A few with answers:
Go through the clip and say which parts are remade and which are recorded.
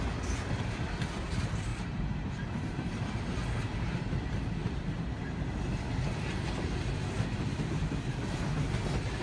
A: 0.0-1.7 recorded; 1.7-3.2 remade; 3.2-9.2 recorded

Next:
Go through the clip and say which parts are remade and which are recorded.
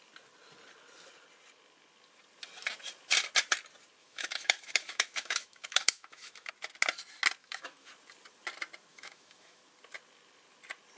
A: 0.0-4.0 recorded; 4.0-6.5 remade; 6.5-7.4 recorded; 7.4-7.9 remade; 7.9-8.9 recorded; 8.9-9.6 remade; 9.6-11.0 recorded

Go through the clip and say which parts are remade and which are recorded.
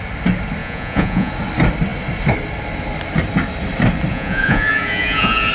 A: 0.0-0.6 recorded; 0.6-1.3 remade; 1.3-4.1 recorded; 4.1-5.5 remade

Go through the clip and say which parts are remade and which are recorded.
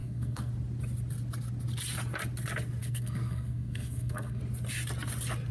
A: 0.0-0.5 remade; 0.5-2.8 recorded; 2.8-4.4 remade; 4.4-5.5 recorded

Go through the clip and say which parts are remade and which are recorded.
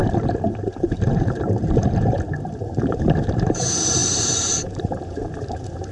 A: 0.0-5.9 remade